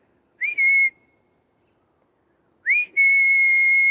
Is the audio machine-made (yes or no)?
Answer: no